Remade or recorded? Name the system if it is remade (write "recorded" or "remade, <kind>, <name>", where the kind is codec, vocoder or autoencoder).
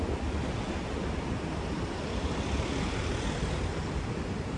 recorded